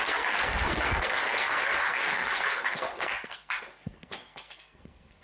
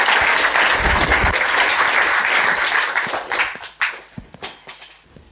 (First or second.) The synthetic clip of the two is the first